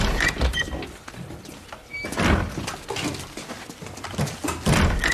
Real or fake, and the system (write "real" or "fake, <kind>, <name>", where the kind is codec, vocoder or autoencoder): real